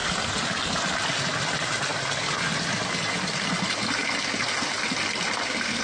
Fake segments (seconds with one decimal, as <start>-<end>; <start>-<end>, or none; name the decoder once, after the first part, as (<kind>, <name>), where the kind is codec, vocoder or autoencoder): none